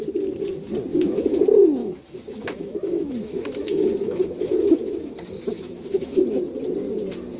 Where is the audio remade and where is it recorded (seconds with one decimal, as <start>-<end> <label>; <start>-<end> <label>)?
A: 0.0-0.9 recorded; 0.9-1.4 remade; 1.4-1.8 recorded; 1.8-6.2 remade; 6.2-7.4 recorded